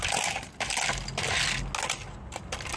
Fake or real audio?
real